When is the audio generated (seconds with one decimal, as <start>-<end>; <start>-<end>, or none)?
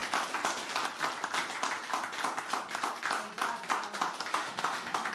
4.3-5.1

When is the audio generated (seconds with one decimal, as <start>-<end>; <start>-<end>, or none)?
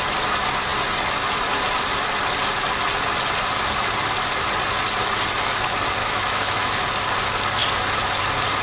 6.0-6.7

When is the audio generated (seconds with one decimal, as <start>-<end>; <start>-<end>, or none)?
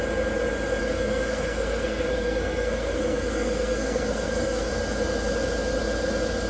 0.8-4.7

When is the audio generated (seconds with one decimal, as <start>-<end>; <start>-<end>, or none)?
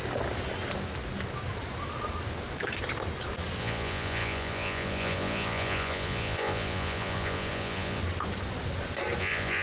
3.6-8.0; 9.2-9.6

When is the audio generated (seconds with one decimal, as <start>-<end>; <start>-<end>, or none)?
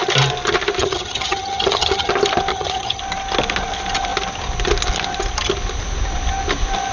0.8-2.1; 2.5-3.0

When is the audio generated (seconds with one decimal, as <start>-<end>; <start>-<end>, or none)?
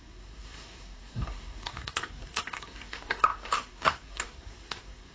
0.0-5.1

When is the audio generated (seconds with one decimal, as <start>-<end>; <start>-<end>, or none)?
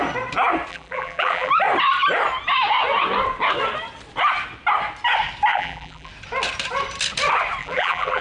0.7-1.5; 5.5-6.1; 7.6-8.2